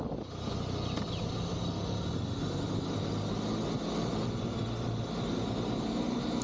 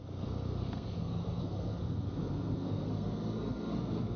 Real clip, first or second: first